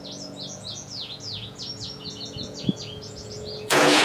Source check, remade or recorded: remade